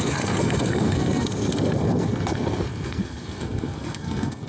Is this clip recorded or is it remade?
remade